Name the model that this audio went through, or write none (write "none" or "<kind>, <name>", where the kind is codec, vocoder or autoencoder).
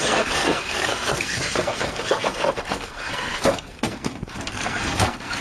codec, SNAC